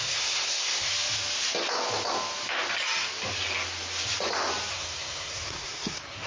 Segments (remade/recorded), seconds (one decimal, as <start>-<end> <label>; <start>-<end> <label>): 0.0-0.9 remade; 0.9-4.7 recorded; 4.7-6.3 remade